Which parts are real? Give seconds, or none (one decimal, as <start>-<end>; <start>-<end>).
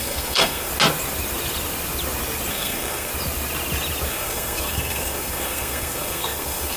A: 0.7-2.5; 3.1-4.1